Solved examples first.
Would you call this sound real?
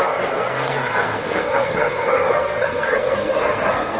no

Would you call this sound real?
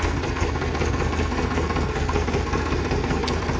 no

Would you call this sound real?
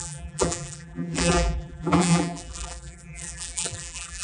no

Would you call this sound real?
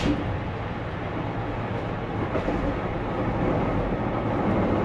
yes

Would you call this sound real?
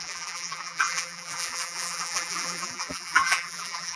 no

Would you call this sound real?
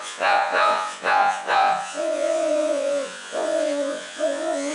no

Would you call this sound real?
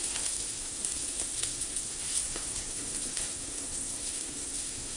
no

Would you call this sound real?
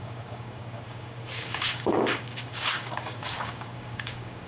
no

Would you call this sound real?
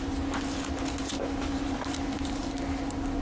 yes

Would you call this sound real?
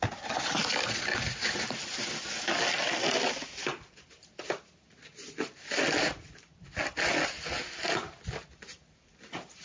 yes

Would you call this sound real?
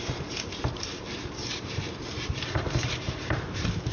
no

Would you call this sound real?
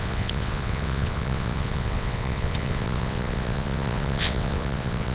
no